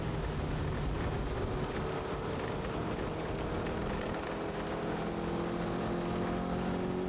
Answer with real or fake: real